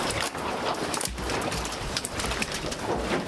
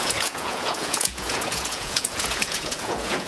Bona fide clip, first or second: first